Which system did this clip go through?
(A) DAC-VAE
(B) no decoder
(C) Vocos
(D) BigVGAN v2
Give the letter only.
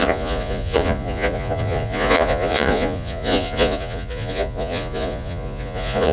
C